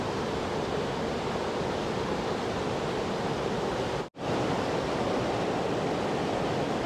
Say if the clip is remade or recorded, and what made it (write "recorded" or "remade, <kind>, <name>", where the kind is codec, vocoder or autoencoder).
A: recorded